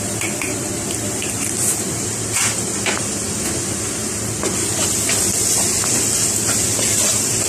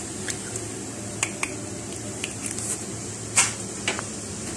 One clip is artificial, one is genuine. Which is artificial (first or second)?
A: first